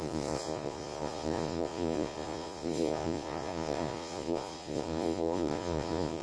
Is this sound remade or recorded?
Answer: remade